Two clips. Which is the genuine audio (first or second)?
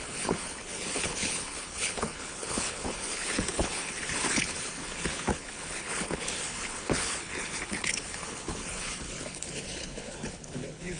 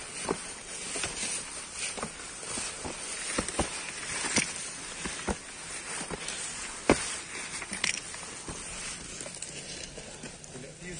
second